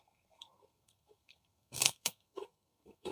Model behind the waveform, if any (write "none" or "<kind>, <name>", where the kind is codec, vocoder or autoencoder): codec, SNAC